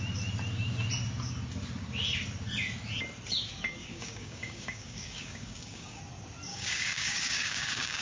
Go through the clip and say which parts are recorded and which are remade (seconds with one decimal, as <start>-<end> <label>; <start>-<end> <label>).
0.0-3.8 recorded; 3.8-6.0 remade; 6.0-6.5 recorded; 6.5-8.0 remade